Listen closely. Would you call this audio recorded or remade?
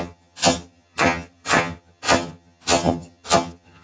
remade